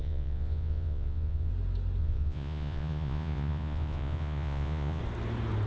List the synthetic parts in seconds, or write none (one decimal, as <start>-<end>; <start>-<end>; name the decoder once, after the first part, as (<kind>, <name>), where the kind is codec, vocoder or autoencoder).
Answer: 0.0-1.5 (vocoder, Vocos); 2.0-5.0